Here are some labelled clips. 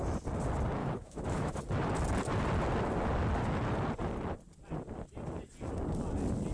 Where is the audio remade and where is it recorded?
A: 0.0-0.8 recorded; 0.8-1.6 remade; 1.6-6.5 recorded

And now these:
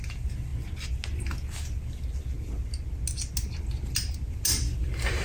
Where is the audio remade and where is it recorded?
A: 0.0-5.2 recorded

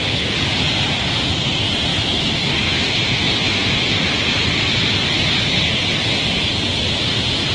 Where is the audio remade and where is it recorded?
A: 0.0-1.9 recorded; 1.9-2.8 remade; 2.8-7.5 recorded

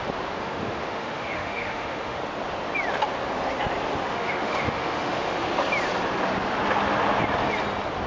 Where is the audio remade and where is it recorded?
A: 0.0-0.4 recorded; 0.4-2.2 remade; 2.2-4.1 recorded; 4.1-5.5 remade; 5.5-8.1 recorded